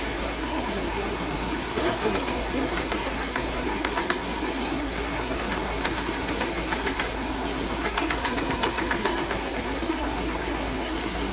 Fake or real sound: fake